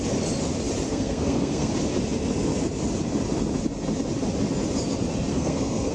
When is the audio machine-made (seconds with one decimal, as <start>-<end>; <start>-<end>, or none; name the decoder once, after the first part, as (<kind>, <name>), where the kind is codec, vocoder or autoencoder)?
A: 0.9-1.7 (codec, SNAC); 5.3-5.9